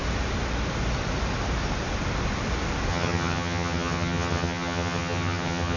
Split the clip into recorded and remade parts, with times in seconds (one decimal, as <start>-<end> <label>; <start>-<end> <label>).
0.0-2.9 recorded; 2.9-5.8 remade